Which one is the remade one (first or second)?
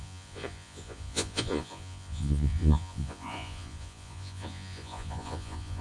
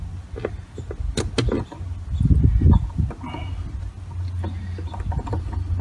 first